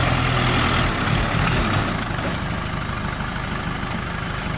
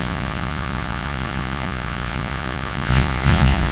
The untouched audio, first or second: first